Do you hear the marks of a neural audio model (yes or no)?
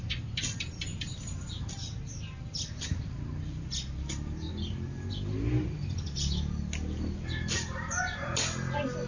no